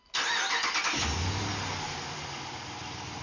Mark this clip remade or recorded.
recorded